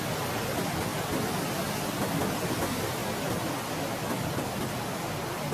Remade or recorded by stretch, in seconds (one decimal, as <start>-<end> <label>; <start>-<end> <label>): 0.0-5.5 recorded